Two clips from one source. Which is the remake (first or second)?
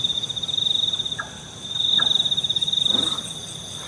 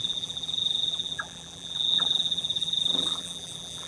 second